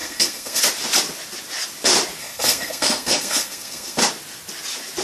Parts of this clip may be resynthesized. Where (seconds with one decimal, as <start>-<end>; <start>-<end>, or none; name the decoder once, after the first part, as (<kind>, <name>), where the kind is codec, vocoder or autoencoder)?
0.0-0.6 (codec, SNAC); 2.2-4.0